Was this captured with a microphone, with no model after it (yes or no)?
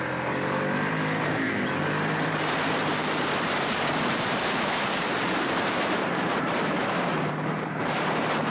no